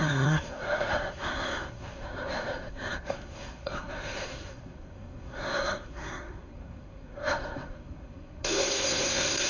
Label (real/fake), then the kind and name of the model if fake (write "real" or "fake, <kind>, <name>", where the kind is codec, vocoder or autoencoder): fake, codec, SNAC